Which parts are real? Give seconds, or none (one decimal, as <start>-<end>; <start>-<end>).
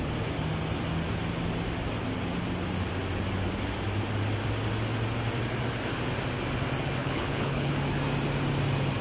0.0-7.0; 7.7-9.0